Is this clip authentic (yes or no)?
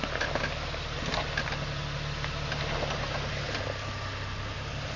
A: yes